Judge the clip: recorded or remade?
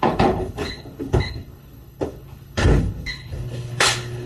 remade